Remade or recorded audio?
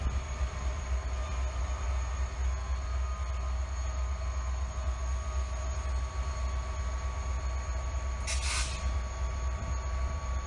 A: recorded